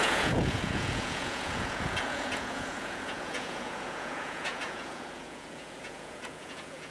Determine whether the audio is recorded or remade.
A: remade